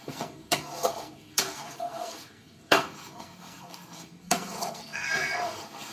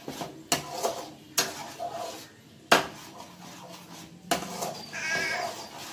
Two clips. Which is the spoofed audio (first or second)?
first